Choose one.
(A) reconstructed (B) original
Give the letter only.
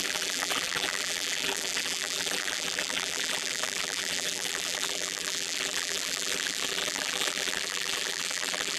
A